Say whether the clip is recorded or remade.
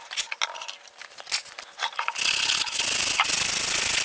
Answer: recorded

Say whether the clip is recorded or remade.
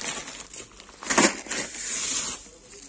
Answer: recorded